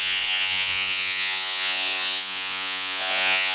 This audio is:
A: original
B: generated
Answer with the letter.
B